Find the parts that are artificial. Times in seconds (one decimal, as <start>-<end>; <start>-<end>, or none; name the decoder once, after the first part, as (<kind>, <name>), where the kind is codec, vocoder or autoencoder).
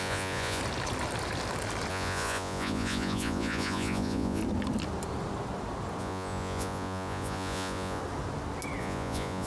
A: 0.0-0.6 (vocoder, Vocos); 1.9-4.4; 6.0-8.0; 8.8-9.5